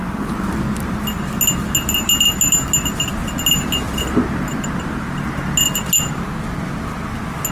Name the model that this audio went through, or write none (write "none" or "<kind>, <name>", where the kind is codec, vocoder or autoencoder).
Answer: none